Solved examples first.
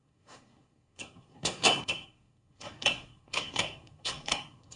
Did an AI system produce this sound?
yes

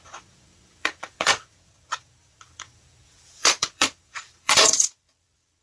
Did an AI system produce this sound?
yes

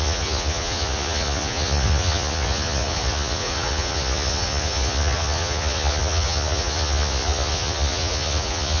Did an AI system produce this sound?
yes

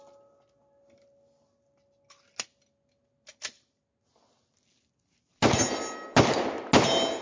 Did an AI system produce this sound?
no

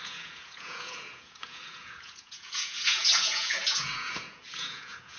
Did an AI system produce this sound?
yes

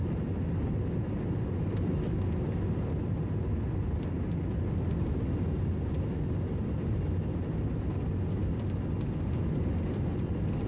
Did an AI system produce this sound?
no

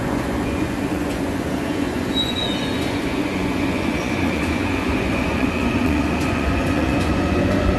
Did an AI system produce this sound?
yes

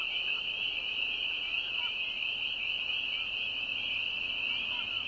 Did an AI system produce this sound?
no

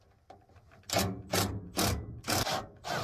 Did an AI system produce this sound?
no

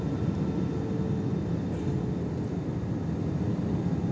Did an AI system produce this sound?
no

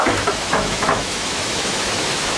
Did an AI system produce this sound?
yes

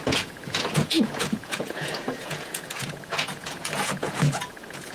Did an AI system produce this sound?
yes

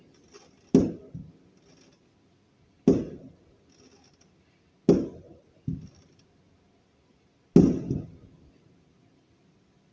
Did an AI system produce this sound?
no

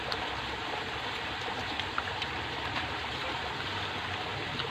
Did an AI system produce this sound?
no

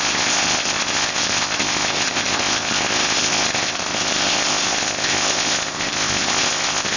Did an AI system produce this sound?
yes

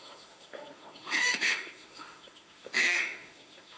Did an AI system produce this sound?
yes